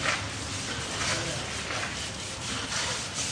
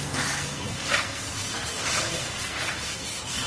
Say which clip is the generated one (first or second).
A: second